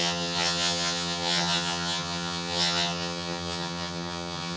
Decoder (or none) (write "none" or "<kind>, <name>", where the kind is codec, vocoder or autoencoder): vocoder, HiFi-GAN